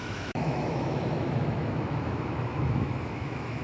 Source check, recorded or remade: remade